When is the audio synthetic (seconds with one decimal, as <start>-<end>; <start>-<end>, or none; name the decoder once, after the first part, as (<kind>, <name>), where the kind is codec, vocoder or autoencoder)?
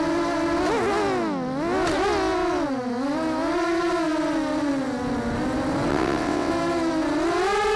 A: 5.9-6.5 (vocoder, WaveNeXt)